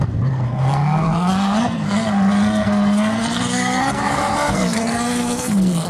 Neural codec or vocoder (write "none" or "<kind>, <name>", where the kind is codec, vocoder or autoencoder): codec, SNAC